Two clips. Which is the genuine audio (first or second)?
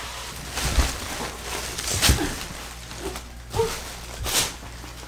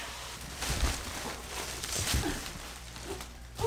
first